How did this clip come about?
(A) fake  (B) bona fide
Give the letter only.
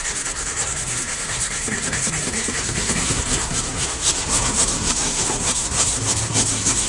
A